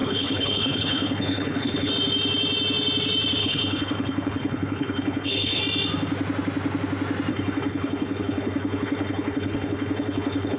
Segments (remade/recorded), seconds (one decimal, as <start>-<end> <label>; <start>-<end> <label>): 0.0-1.9 remade; 1.9-3.4 recorded; 3.4-5.6 remade; 5.6-7.3 recorded; 7.3-10.6 remade